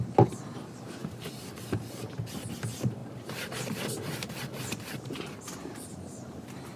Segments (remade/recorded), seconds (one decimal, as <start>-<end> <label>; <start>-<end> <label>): 0.0-6.8 recorded